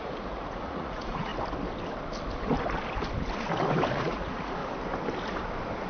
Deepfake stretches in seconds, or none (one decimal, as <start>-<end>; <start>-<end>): 0.0-1.3; 3.9-4.6